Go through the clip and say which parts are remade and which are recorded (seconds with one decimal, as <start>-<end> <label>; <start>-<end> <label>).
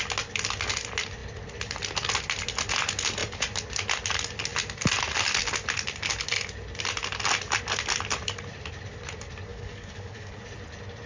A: 0.0-9.5 recorded; 9.5-10.3 remade; 10.3-11.1 recorded